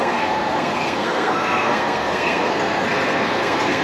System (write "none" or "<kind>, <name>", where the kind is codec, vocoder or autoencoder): codec, SNAC